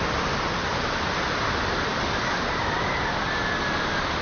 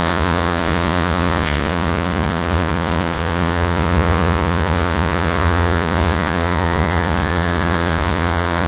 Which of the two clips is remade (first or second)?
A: second